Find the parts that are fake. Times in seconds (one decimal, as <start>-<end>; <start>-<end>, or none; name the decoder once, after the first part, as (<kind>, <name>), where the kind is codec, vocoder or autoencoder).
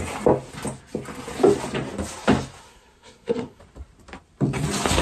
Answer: 2.6-3.6 (codec, SNAC)